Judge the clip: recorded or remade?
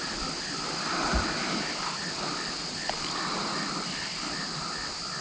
recorded